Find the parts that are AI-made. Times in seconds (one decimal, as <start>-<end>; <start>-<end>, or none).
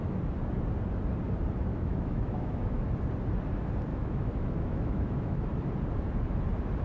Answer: 1.7-2.8; 3.9-5.7